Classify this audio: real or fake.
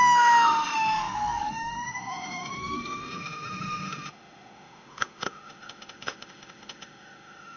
fake